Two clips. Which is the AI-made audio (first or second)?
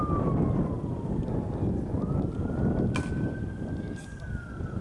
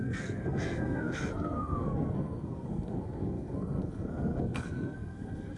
second